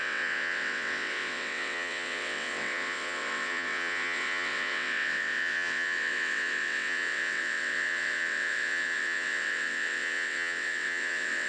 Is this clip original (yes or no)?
no